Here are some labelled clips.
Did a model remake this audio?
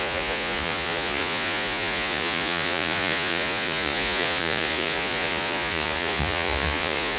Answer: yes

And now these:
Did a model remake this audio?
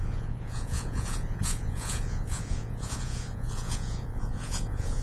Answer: yes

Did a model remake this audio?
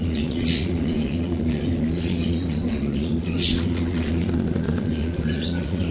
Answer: yes